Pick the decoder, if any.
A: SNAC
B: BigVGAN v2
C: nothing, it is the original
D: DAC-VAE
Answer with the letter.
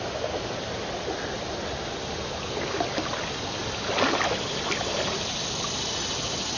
C